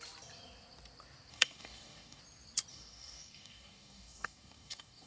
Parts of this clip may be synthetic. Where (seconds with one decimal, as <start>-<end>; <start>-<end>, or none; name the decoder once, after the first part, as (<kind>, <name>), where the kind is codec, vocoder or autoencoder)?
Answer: 1.3-2.2 (codec, DAC); 2.7-5.1